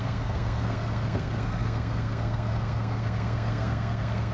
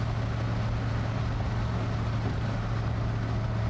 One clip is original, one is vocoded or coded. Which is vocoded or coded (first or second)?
first